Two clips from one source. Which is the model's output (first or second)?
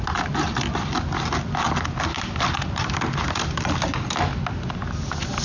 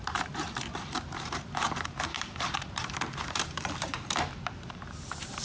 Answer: second